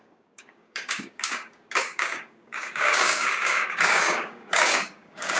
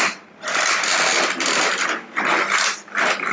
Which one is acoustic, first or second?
second